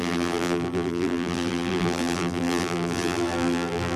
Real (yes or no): no